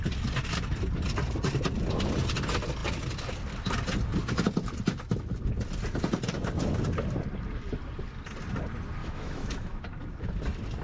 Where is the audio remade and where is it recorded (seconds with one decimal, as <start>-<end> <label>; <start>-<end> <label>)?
0.0-9.0 recorded; 9.0-9.8 remade; 9.8-10.8 recorded